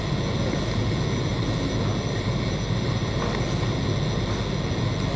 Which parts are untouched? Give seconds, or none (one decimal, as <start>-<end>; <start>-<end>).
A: 0.0-5.2